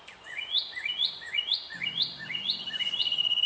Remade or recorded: remade